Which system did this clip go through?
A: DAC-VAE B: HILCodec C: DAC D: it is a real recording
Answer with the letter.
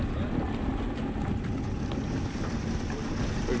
D